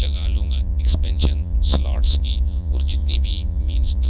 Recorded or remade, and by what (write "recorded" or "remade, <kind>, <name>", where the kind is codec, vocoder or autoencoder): remade, vocoder, Vocos